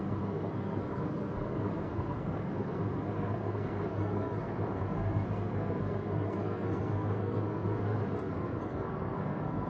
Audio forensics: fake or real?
fake